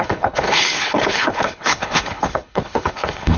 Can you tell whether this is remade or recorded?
remade